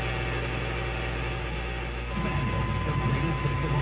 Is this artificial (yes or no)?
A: no